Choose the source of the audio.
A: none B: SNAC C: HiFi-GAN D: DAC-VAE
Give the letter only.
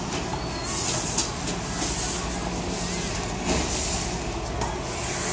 A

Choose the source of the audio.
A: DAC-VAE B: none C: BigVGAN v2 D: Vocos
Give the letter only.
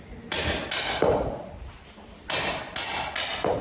B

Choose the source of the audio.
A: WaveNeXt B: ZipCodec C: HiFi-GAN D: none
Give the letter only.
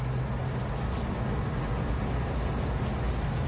D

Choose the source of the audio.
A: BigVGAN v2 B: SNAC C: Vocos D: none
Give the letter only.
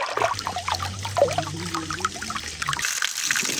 D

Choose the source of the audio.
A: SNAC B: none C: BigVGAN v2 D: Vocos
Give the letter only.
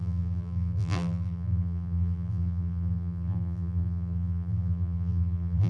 C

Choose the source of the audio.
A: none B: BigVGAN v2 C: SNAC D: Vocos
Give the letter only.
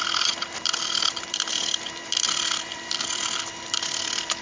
B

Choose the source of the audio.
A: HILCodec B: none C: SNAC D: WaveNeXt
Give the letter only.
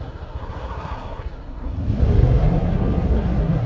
C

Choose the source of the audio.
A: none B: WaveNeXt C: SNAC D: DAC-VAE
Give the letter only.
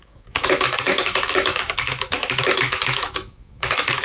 D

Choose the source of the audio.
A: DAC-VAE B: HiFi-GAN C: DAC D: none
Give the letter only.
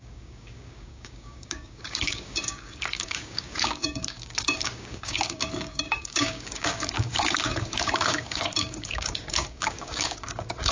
C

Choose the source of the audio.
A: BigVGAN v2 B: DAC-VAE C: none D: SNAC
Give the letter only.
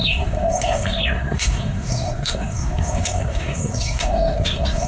D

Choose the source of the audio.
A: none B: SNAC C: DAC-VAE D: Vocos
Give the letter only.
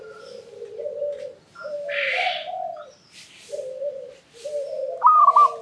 A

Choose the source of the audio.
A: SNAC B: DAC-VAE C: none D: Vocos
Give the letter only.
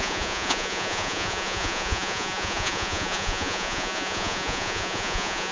D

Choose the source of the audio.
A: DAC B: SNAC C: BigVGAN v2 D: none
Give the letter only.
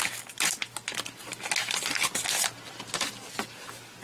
D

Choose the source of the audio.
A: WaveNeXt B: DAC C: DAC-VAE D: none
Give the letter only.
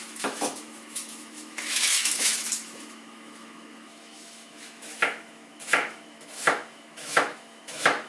C